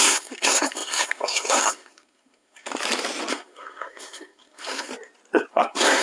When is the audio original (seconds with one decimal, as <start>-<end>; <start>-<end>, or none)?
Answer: 2.7-3.3; 4.9-5.5